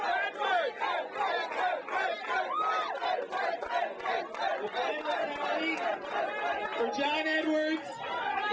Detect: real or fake real